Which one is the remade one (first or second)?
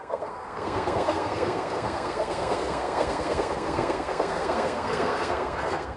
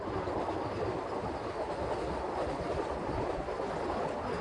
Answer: first